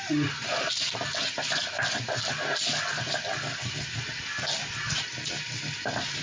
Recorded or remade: recorded